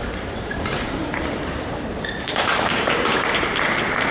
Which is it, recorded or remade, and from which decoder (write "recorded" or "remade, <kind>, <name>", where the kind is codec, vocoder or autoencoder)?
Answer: remade, vocoder, BigVGAN v2